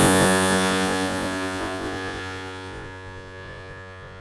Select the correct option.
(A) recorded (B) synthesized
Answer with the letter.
B